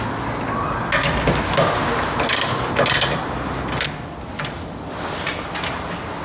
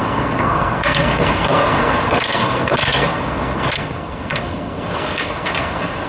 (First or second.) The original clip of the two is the first